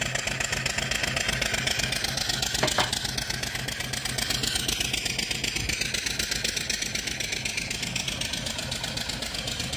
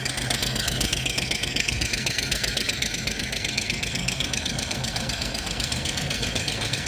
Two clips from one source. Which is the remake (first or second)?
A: second